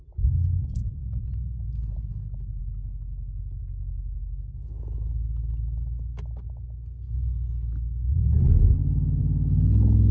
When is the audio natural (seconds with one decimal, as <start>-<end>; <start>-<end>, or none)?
0.0-0.8; 2.1-10.1

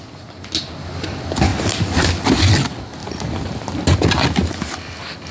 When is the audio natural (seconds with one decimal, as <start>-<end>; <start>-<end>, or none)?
0.0-1.5; 2.1-3.0; 3.5-5.3

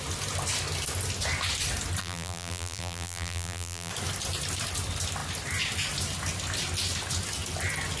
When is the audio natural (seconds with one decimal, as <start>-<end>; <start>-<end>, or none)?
0.0-2.0; 3.9-8.0

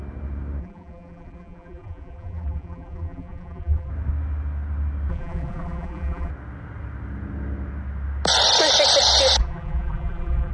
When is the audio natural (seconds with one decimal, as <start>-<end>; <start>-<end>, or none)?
0.0-0.6; 3.9-5.1; 6.3-9.4

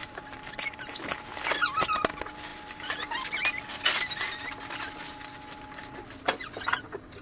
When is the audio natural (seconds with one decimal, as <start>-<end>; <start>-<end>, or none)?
1.1-2.5; 3.4-7.2

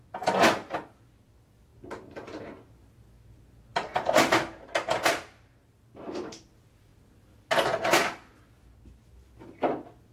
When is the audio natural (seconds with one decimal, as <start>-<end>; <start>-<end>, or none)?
0.0-10.1